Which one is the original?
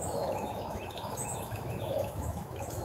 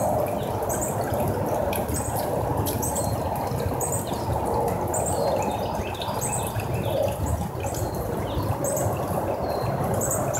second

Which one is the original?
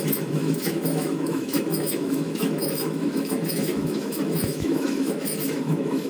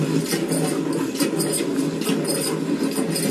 second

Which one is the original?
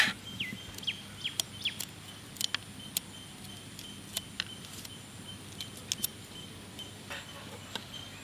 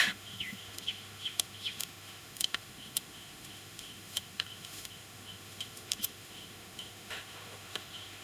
first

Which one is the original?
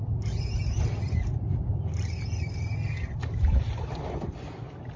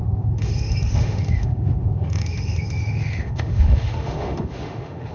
first